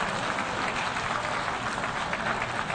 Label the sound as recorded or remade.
recorded